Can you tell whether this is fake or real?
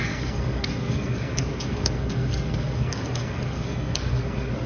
fake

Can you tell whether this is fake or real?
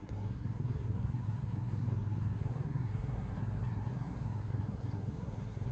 fake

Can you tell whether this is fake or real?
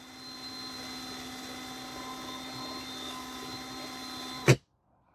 real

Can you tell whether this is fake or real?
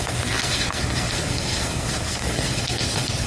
fake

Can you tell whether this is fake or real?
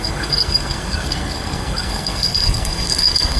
fake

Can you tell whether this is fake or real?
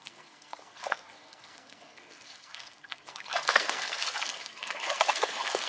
fake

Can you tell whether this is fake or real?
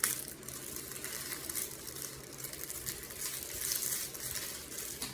real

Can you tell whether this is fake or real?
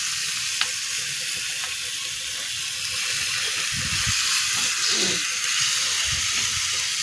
real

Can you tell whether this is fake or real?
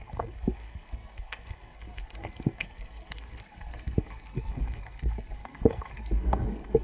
fake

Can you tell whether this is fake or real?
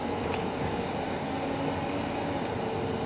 real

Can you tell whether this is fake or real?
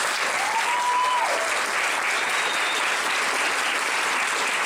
real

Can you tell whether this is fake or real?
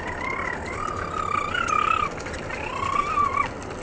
real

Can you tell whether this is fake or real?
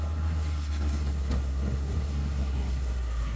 fake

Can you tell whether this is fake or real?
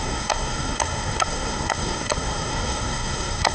fake